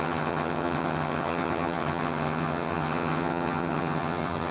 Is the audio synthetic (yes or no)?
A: yes